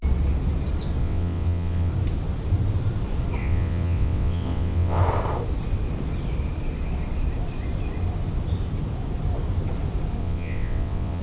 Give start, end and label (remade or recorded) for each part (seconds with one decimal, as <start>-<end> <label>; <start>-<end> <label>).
0.0-1.0 recorded; 1.0-1.9 remade; 1.9-3.4 recorded; 3.4-5.0 remade; 5.0-10.2 recorded; 10.2-11.2 remade